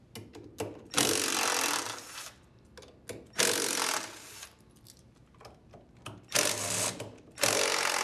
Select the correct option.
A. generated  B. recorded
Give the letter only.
B